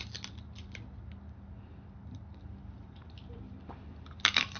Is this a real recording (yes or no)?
no